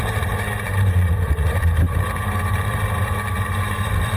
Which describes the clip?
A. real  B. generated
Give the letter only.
B